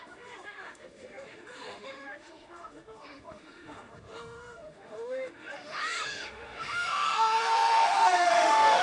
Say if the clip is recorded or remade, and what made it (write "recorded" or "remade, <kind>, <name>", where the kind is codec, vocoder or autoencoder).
remade, autoencoder, DAC-VAE